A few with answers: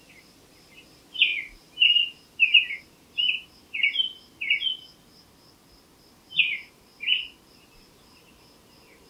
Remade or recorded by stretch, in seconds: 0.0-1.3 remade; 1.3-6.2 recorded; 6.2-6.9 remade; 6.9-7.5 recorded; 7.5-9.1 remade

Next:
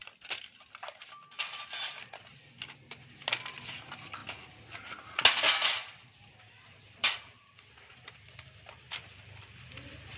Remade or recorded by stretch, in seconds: 0.0-3.5 recorded; 3.5-4.2 remade; 4.2-6.4 recorded; 6.4-10.2 remade

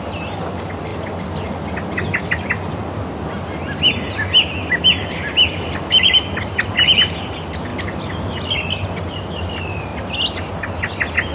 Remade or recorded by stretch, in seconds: 0.0-11.3 recorded

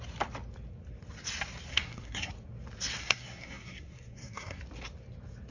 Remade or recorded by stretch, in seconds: 0.0-1.7 recorded; 1.7-2.3 remade; 2.3-3.0 recorded; 3.0-4.6 remade; 4.6-5.5 recorded

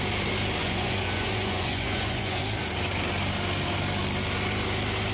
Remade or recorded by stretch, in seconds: 0.0-0.6 recorded; 0.6-2.4 remade; 2.4-5.1 recorded